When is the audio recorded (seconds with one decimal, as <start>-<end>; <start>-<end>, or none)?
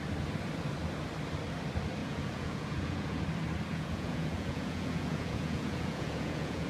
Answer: 0.0-2.0; 3.2-3.7